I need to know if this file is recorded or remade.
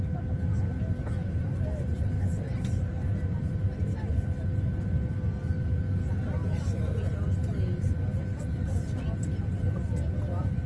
recorded